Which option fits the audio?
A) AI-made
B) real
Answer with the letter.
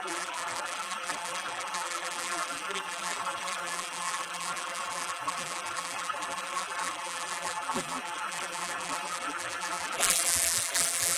A